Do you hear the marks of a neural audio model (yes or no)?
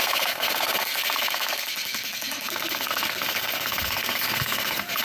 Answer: yes